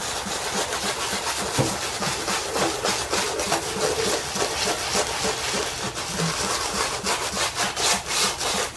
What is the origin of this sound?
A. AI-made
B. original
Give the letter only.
B